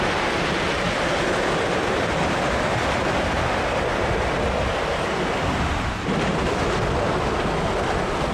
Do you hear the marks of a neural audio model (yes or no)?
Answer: no